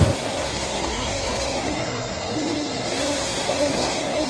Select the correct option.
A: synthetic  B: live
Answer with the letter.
A